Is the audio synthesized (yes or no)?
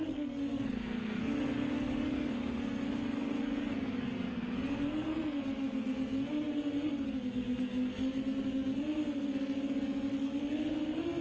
yes